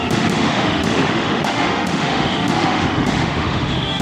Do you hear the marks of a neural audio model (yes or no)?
yes